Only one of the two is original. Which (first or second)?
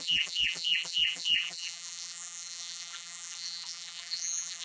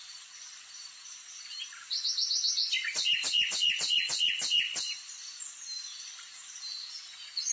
second